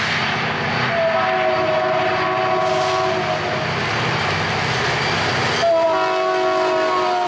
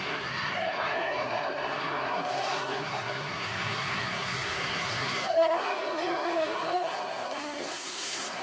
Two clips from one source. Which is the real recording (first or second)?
first